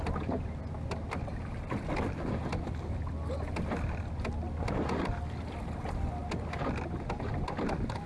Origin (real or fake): real